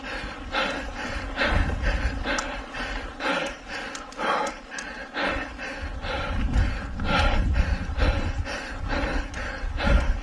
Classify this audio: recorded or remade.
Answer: recorded